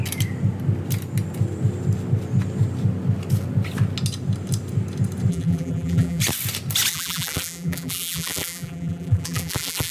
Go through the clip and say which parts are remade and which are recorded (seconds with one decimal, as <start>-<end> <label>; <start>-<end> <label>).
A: 0.0-5.3 recorded; 5.3-6.2 remade; 6.2-6.9 recorded; 6.9-9.9 remade